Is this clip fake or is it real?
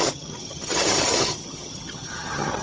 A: fake